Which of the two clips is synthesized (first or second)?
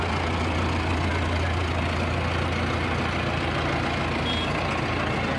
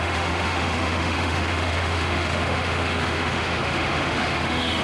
second